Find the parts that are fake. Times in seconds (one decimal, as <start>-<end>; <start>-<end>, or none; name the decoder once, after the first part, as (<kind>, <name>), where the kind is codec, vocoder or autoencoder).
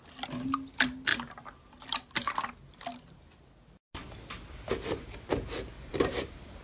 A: 5.3-6.6 (vocoder, BigVGAN v2)